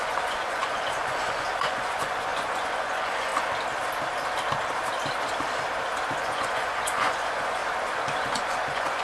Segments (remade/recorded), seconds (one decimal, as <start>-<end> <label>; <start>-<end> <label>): 0.0-3.3 remade; 3.3-6.2 recorded; 6.2-7.6 remade; 7.6-8.2 recorded; 8.2-9.0 remade

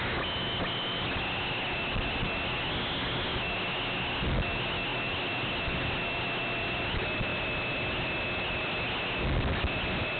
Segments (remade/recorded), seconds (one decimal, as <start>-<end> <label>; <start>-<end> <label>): 0.0-10.2 recorded

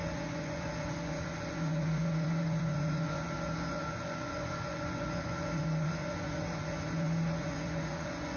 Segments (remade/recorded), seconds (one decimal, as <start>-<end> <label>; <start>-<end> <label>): 0.0-8.4 remade

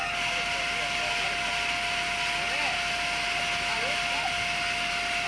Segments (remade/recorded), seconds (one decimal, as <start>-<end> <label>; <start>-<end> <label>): 0.0-5.3 recorded

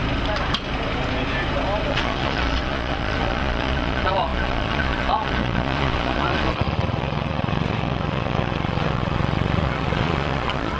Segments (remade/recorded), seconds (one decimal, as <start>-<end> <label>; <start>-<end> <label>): 0.0-1.9 recorded; 1.9-10.8 remade

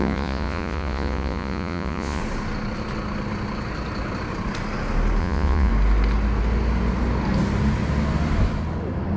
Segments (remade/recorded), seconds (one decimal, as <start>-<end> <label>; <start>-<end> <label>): 0.0-2.2 remade; 2.2-5.2 recorded; 5.2-5.7 remade; 5.7-9.2 recorded

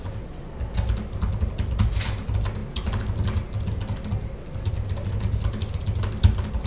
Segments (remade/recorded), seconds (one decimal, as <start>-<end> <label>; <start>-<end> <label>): 0.0-6.7 recorded

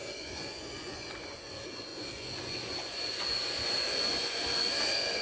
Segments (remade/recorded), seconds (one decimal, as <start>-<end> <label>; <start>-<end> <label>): 0.0-5.2 remade